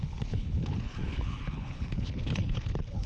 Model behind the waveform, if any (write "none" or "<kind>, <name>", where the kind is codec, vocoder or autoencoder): codec, HILCodec